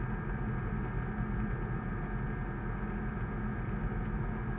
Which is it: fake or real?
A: real